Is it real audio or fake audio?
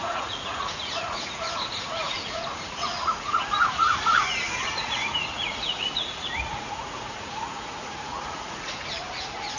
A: fake